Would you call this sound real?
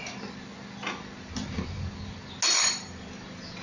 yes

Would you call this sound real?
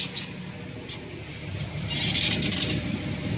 yes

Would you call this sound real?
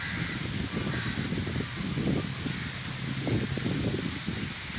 yes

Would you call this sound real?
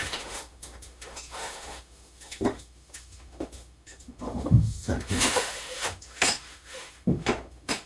no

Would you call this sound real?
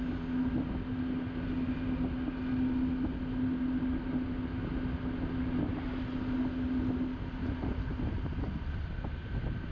yes